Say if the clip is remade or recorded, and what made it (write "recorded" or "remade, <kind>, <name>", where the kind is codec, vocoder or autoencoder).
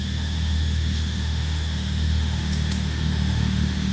remade, autoencoder, DAC-VAE